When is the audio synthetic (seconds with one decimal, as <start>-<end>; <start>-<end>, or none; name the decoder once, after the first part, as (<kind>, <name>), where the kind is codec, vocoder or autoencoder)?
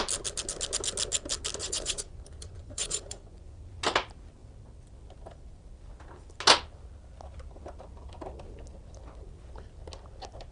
1.6-3.6 (vocoder, Vocos)